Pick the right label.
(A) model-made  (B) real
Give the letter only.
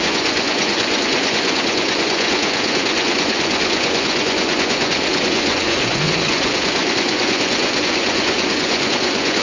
A